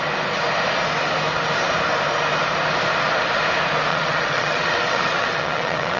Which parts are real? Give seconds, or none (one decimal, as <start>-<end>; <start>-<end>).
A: 0.0-3.9